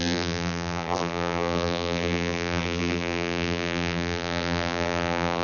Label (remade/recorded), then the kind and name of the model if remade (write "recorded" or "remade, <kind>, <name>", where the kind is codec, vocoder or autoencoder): remade, vocoder, BigVGAN v2